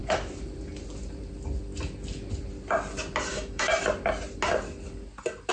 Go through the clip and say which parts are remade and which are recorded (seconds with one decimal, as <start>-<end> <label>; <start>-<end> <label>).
0.0-3.3 recorded; 3.3-3.7 remade; 3.7-5.5 recorded